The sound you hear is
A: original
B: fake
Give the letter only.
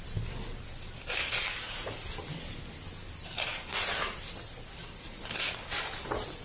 A